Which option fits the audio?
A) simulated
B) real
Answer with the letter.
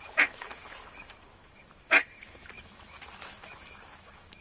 A